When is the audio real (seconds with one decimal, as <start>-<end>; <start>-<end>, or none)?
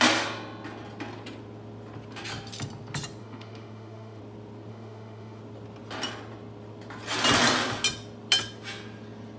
0.0-3.2; 4.2-4.7; 5.4-9.4